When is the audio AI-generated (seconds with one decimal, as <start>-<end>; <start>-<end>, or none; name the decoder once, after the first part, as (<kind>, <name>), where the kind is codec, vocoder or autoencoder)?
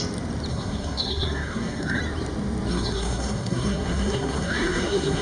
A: 0.5-2.0 (codec, SNAC); 2.7-5.2